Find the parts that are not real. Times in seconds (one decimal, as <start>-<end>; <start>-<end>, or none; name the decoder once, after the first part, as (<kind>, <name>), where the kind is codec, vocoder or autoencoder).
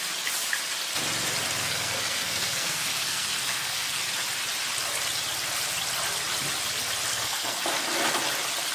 1.6-4.0 (codec, SNAC); 7.1-7.6